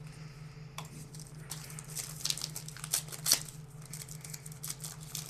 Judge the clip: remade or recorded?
recorded